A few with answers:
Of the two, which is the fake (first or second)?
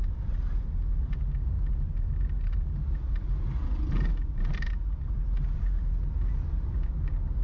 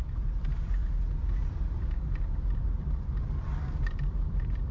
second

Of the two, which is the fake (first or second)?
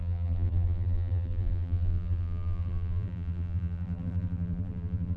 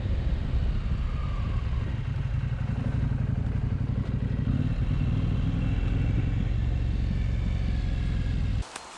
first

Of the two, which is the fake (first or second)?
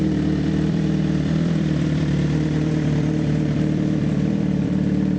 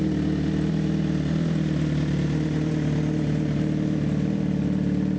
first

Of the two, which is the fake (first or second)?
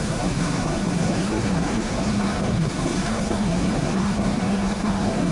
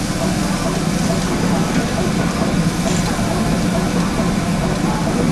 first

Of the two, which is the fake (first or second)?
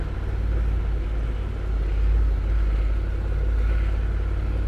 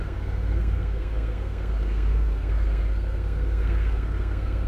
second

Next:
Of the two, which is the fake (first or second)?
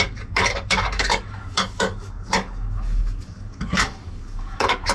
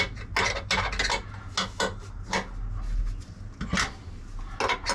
first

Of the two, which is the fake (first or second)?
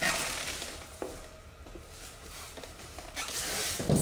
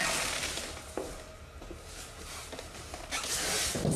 first